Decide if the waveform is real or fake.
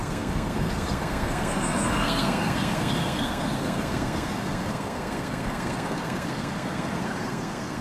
fake